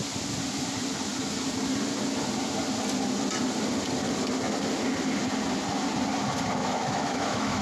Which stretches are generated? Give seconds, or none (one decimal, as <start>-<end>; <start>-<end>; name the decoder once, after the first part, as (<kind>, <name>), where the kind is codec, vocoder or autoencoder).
6.6-7.6 (autoencoder, DAC-VAE)